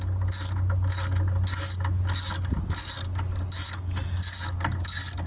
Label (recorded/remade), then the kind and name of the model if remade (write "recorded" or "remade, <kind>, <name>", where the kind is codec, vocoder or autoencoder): recorded